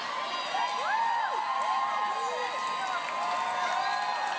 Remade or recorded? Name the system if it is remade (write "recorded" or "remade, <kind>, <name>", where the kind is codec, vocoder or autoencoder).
recorded